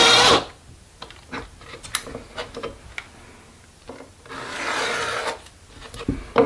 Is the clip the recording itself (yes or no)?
yes